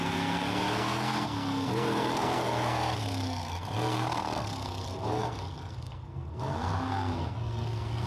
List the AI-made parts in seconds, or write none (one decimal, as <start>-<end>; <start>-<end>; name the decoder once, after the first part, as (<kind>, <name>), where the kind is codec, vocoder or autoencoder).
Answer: 0.0-8.1 (codec, SNAC)